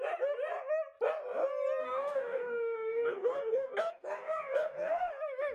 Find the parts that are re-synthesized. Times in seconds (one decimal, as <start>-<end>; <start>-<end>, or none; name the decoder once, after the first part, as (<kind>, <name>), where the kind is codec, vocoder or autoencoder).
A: 1.8-5.1 (codec, DAC)